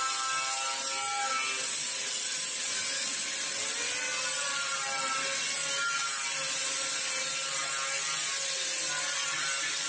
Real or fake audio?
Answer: real